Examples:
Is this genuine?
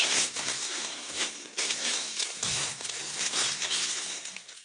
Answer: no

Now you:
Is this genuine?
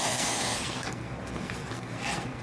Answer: no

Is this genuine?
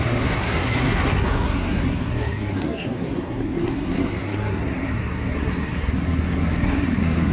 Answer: no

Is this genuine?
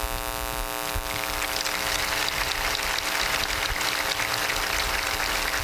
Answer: yes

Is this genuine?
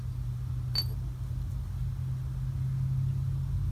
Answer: yes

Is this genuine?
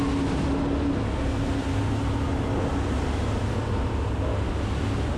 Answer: yes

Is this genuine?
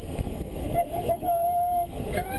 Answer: no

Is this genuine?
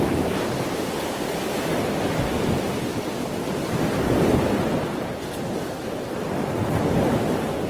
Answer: yes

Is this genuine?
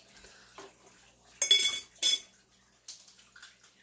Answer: yes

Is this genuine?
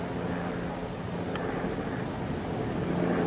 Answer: yes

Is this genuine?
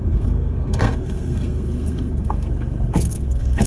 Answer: no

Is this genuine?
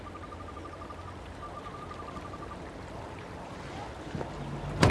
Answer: yes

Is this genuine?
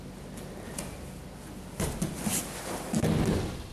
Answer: yes